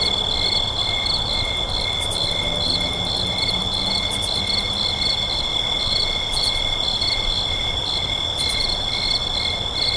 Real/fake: real